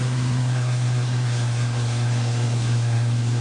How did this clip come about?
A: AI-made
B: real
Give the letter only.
A